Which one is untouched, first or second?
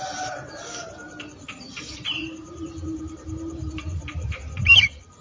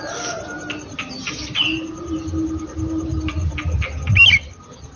second